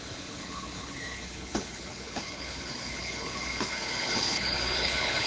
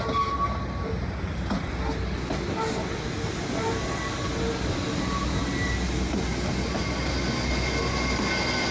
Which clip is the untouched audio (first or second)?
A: second